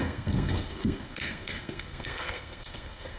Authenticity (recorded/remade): remade